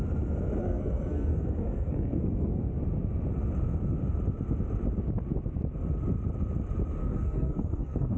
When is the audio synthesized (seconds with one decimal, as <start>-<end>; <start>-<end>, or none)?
0.6-2.7; 7.0-8.2